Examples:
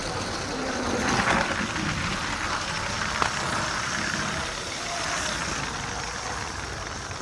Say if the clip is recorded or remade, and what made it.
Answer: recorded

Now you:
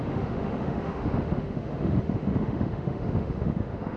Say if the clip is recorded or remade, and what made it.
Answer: remade, autoencoder, DAC-VAE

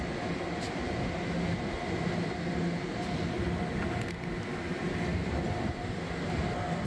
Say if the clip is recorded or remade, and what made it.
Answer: recorded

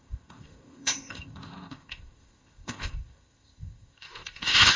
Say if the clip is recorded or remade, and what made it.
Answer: remade, codec, ZipCodec